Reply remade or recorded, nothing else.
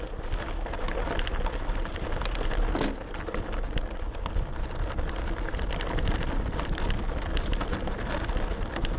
recorded